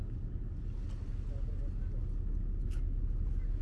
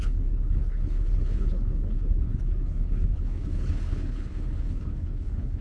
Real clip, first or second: first